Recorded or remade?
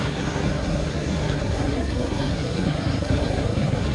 remade